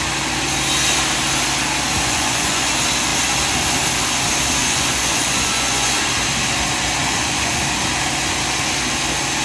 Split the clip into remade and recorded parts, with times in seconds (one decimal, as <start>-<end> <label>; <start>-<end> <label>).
0.0-2.0 recorded; 2.0-2.7 remade; 2.7-4.6 recorded; 4.6-6.0 remade; 6.0-7.0 recorded; 7.0-7.6 remade; 7.6-9.4 recorded